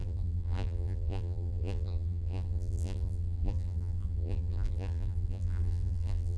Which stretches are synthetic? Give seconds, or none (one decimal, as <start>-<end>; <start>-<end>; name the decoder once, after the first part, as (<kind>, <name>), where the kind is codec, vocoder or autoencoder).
0.0-6.4 (vocoder, BigVGAN v2)